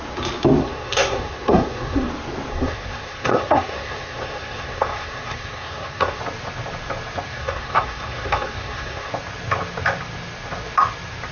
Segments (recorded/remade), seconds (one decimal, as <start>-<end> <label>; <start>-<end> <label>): 0.0-0.6 recorded; 0.6-2.1 remade; 2.1-2.5 recorded; 2.5-6.2 remade; 6.2-7.3 recorded; 7.3-9.1 remade; 9.1-11.3 recorded